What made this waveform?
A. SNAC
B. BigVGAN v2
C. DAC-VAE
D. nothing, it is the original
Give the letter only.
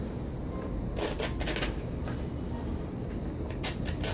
D